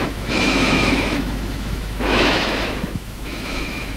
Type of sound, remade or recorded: remade